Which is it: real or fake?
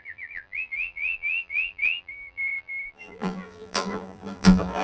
fake